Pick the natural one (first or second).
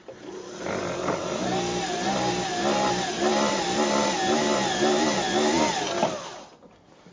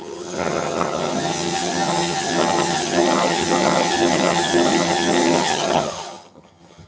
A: first